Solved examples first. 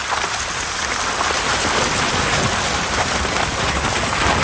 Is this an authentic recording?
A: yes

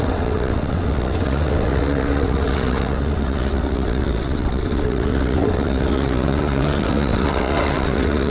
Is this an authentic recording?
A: no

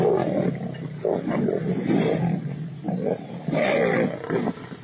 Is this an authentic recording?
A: yes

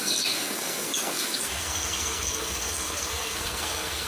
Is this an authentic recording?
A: no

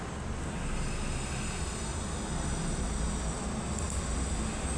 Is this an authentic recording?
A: yes